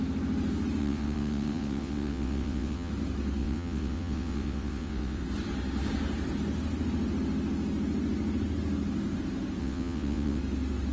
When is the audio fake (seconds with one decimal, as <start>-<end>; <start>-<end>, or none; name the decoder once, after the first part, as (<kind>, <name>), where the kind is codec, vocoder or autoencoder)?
0.8-2.9 (vocoder, WaveNeXt); 3.4-5.2; 9.6-10.4